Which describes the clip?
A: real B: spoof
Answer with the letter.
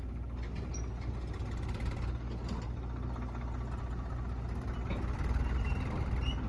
A